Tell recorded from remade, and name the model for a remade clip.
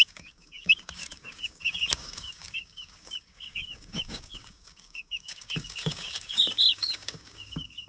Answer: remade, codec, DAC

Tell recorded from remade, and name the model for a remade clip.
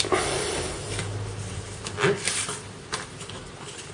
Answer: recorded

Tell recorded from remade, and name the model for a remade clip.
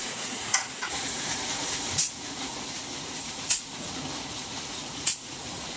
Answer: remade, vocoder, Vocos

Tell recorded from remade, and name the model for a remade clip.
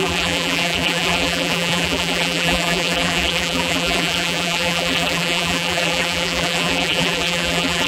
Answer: remade, vocoder, BigVGAN v2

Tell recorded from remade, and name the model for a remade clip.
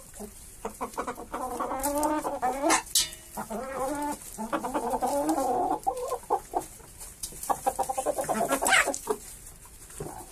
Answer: recorded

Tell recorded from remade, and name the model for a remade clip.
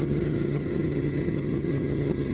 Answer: remade, vocoder, HiFi-GAN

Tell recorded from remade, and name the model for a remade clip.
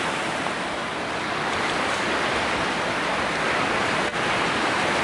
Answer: recorded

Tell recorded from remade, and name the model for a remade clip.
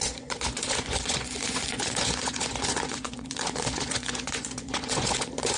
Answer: remade, vocoder, Vocos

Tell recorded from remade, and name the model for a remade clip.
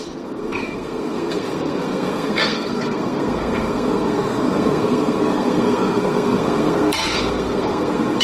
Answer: remade, codec, SNAC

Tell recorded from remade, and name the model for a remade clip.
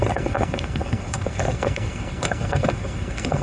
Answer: remade, codec, SNAC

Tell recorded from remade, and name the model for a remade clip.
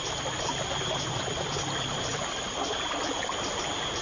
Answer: recorded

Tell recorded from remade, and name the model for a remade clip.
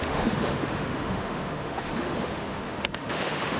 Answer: remade, autoencoder, DAC-VAE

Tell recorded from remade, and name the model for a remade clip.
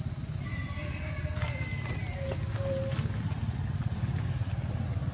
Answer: recorded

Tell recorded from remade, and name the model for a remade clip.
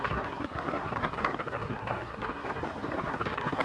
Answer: remade, codec, SNAC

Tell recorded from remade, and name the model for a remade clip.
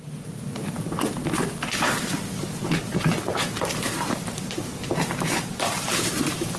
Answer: remade, vocoder, BigVGAN v2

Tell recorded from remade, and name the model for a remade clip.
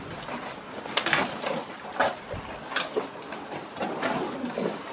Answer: recorded